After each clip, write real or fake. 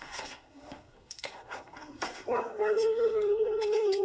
fake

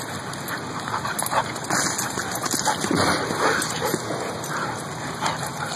real